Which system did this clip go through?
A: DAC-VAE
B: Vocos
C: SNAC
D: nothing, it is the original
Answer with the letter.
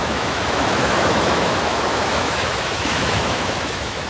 A